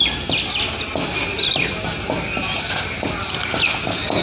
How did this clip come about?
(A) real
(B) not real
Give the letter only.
A